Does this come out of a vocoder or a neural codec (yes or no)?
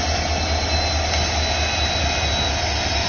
no